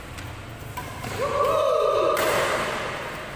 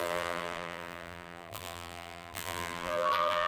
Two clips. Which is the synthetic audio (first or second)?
second